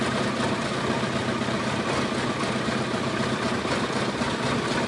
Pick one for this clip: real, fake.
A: real